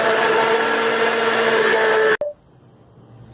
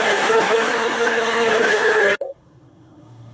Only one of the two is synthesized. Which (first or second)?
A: second